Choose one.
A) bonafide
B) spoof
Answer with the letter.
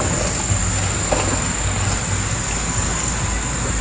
A